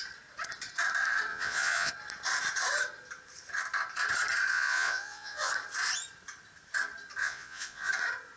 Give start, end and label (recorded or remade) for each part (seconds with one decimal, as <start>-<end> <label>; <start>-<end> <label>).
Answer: 0.0-1.3 recorded; 1.3-1.9 remade; 1.9-4.5 recorded; 4.5-5.5 remade; 5.5-7.2 recorded; 7.2-7.9 remade; 7.9-8.4 recorded